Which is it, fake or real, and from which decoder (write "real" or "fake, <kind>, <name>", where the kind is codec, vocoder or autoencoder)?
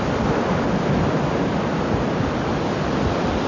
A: real